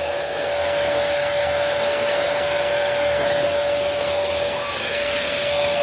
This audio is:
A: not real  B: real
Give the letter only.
A